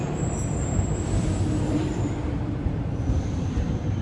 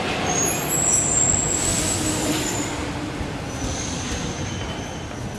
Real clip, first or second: second